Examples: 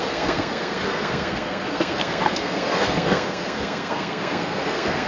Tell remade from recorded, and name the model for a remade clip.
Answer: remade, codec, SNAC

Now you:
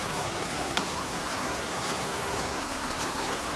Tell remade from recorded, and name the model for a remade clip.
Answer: remade, codec, SNAC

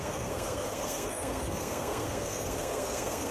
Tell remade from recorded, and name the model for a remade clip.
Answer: remade, codec, SNAC